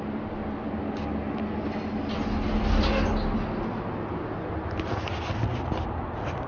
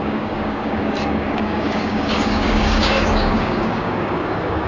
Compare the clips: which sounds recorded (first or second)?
first